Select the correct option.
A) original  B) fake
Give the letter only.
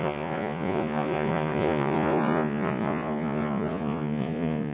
B